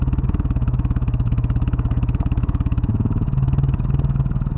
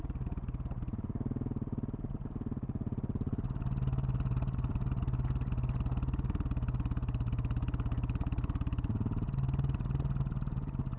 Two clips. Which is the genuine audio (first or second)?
second